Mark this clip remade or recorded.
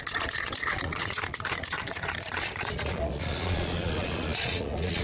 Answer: remade